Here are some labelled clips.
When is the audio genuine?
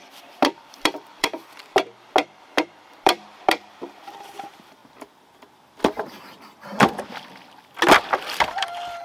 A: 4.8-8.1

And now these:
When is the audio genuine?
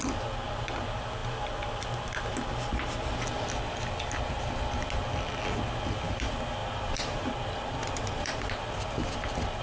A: 0.0-6.6; 8.5-9.6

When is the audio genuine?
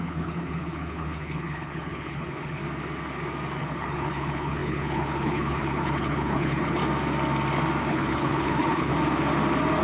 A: 2.6-3.6; 6.8-7.9; 8.9-9.8